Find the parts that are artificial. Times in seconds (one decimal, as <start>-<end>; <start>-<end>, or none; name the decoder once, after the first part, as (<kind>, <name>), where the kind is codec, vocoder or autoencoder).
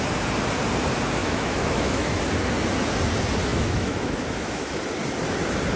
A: 1.2-2.2 (autoencoder, DAC-VAE); 3.5-4.8